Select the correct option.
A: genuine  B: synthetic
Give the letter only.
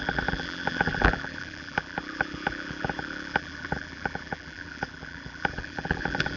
B